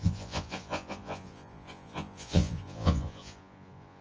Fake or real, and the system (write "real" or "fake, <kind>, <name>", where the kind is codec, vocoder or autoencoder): fake, vocoder, Vocos